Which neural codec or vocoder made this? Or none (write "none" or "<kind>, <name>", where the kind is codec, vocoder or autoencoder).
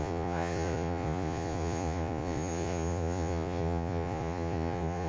vocoder, Vocos